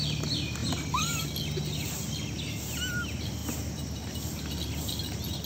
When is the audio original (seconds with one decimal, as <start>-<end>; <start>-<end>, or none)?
0.0-5.5